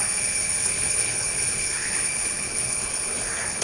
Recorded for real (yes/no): no